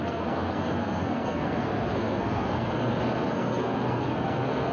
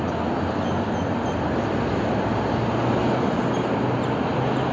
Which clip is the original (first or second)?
second